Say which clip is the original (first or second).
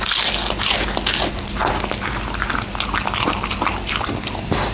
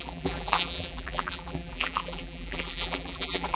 first